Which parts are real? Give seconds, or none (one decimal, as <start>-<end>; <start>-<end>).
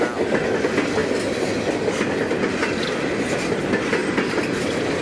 0.0-5.0